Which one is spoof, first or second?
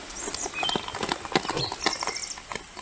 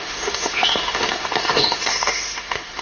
second